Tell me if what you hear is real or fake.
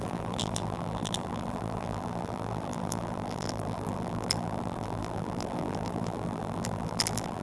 fake